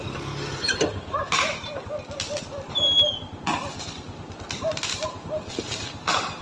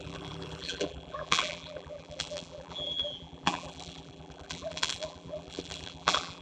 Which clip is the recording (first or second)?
first